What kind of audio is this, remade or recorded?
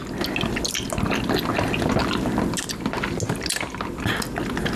recorded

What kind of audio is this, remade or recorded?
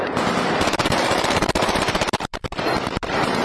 remade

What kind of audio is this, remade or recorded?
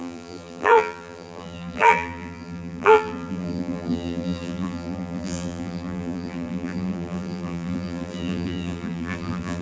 remade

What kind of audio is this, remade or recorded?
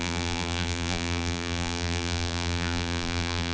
remade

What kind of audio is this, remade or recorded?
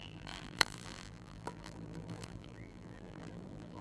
remade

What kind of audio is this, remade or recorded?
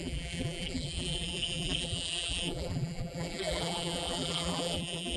remade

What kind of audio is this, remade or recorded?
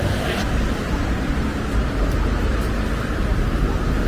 recorded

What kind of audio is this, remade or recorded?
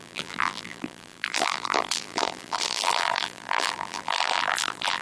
remade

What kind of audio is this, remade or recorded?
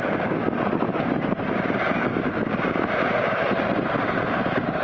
remade